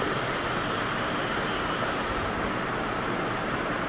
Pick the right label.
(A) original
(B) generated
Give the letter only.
A